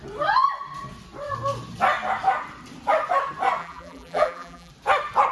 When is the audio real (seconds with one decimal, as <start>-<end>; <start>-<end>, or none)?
0.0-3.6; 4.7-5.3